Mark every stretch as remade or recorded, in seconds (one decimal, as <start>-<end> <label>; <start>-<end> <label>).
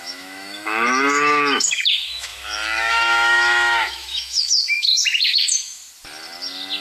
0.0-5.8 remade; 5.8-6.8 recorded